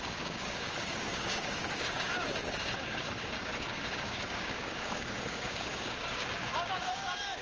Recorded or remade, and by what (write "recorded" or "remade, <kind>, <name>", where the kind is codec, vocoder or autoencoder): remade, codec, DAC